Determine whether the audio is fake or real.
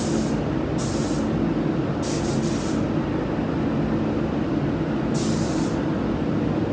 real